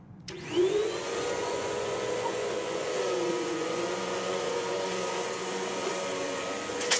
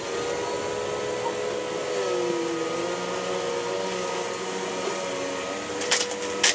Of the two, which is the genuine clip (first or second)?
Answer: second